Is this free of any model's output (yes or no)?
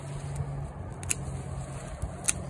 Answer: yes